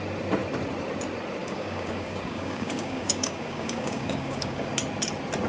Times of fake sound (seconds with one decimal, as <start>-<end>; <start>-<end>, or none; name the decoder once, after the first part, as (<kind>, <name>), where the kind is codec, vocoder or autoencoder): 1.4-4.7 (codec, DAC)